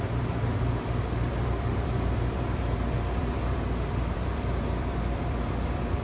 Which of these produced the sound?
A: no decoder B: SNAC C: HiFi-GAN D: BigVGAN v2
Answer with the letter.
D